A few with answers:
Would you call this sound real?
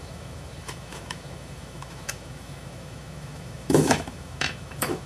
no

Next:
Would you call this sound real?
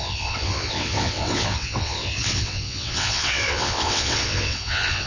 no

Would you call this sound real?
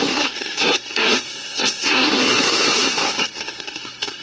no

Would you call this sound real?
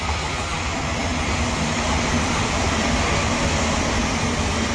yes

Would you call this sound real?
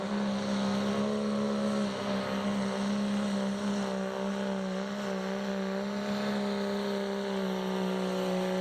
yes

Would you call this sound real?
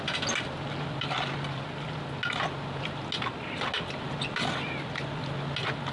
yes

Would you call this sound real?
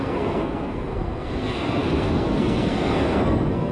no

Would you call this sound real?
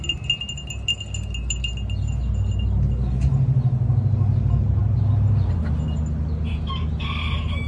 yes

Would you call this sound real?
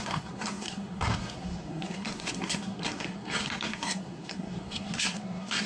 no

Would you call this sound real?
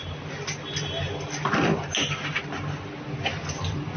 yes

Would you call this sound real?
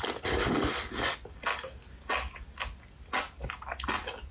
yes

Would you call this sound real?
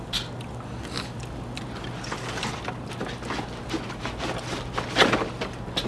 yes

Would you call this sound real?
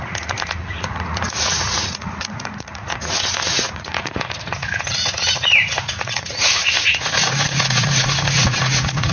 no